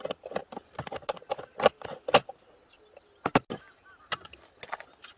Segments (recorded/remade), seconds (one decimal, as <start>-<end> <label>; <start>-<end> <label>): 0.0-5.2 recorded